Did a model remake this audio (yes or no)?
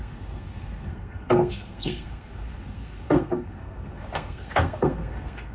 yes